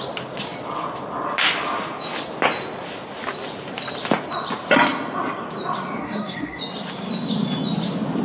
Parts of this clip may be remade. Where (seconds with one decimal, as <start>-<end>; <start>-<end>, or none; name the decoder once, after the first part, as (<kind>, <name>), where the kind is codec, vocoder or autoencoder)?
6.0-6.6 (codec, SNAC)